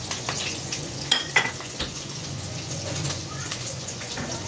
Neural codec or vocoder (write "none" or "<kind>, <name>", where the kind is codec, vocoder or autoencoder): vocoder, Vocos